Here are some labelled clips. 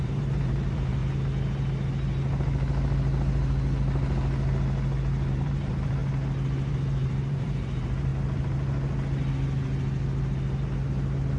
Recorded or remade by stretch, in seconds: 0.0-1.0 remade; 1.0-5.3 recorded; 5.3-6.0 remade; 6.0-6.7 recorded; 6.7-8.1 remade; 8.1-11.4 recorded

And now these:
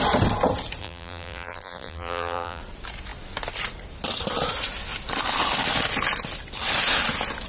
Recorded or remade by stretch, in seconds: 0.0-0.8 recorded; 0.8-2.6 remade; 2.6-7.5 recorded

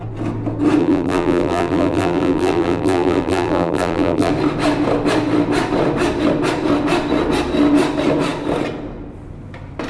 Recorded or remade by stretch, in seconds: 0.0-0.8 recorded; 0.8-4.3 remade; 4.3-9.9 recorded

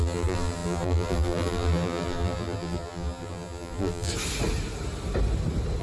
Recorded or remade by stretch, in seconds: 0.0-4.1 remade; 4.1-5.8 recorded